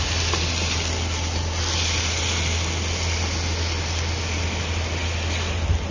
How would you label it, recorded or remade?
recorded